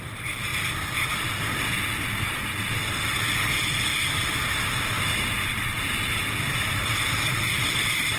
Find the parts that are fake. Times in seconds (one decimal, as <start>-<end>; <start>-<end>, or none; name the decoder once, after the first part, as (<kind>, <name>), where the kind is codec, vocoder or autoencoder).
0.0-0.5 (vocoder, BigVGAN v2); 5.4-8.2